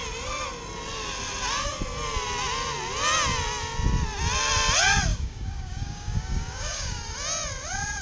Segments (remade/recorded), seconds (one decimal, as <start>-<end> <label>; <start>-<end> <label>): 0.0-5.1 recorded; 5.1-7.0 remade; 7.0-8.0 recorded